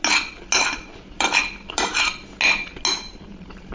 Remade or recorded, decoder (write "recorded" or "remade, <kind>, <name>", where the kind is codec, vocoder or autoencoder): recorded